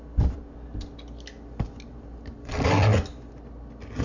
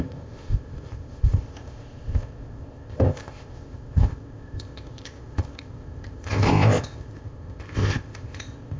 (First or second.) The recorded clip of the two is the first